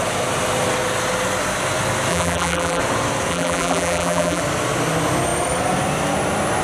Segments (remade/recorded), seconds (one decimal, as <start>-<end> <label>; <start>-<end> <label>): 0.0-2.1 recorded; 2.1-2.8 remade; 2.8-3.3 recorded; 3.3-4.4 remade; 4.4-6.6 recorded